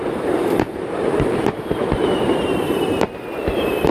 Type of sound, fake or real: fake